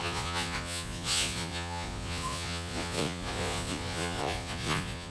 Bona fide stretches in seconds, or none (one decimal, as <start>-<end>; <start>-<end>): none